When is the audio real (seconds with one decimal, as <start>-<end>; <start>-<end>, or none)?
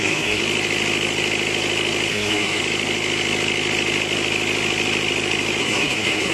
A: 0.4-2.1; 2.6-5.6